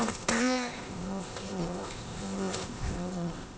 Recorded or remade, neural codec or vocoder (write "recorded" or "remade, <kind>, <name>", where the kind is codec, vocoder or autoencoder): remade, codec, ZipCodec